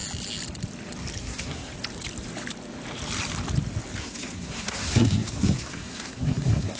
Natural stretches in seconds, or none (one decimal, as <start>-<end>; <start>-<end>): 0.0-1.2; 1.7-4.0